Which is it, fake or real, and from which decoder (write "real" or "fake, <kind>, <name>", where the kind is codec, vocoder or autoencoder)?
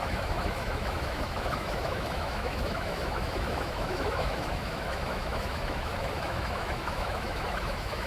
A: fake, autoencoder, DAC-VAE